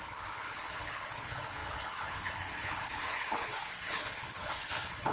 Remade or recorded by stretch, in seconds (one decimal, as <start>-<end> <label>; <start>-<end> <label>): 0.0-5.1 remade